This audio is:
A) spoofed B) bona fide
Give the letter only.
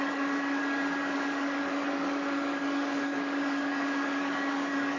A